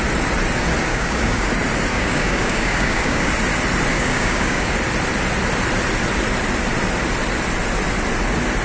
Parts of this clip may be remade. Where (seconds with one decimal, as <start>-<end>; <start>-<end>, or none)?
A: 0.9-1.5; 1.9-3.3; 3.9-4.7